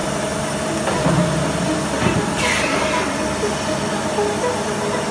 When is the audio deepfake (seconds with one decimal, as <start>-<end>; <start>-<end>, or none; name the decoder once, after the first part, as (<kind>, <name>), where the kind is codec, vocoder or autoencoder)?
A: 0.0-0.7 (vocoder, BigVGAN v2)